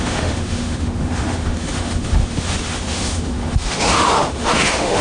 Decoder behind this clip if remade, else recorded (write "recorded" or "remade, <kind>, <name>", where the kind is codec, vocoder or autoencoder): remade, autoencoder, DAC-VAE